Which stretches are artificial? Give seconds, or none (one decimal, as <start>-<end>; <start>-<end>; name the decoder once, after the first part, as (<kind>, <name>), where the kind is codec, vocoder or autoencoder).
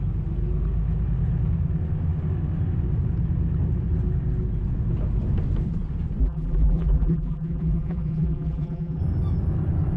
6.2-9.0 (vocoder, BigVGAN v2)